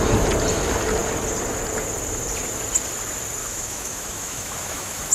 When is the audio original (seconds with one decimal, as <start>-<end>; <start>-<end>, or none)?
0.0-3.4